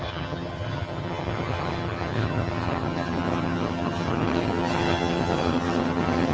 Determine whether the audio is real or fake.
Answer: fake